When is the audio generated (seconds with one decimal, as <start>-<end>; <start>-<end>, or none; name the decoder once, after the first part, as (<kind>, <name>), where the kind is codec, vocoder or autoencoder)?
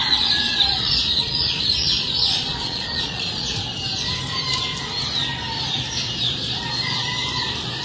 0.0-3.6 (vocoder, Vocos)